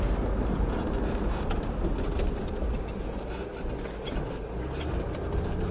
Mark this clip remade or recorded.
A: recorded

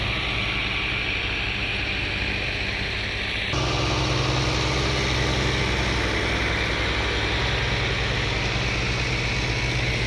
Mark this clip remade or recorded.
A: recorded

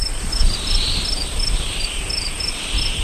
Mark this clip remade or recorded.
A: recorded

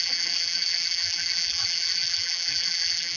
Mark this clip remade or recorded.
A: remade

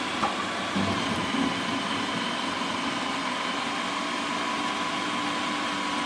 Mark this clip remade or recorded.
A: recorded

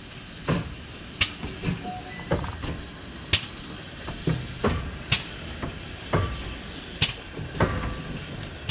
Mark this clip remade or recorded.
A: recorded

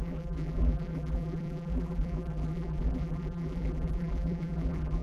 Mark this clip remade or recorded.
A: remade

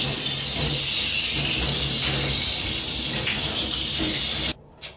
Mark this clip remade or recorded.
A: recorded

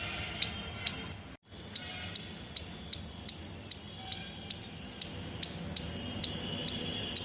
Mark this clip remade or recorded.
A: recorded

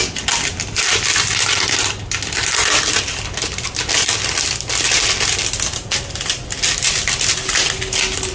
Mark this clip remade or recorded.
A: recorded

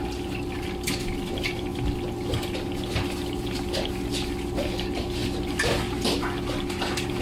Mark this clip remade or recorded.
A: recorded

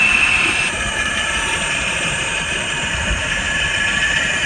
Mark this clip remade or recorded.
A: remade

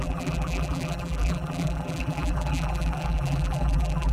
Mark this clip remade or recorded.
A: remade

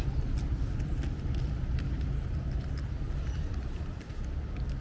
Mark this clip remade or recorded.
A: remade